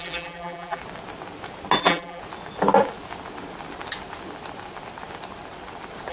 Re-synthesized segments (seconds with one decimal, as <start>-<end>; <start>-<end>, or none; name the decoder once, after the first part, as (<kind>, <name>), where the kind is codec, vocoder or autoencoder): 0.0-0.8 (vocoder, BigVGAN v2); 1.8-2.2